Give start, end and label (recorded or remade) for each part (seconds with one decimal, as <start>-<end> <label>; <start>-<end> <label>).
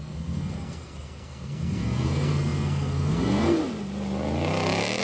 0.0-3.6 remade; 3.6-5.0 recorded